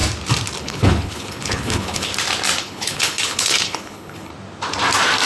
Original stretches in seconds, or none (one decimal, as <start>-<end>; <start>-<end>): 0.0-0.6; 2.1-2.6; 4.3-5.3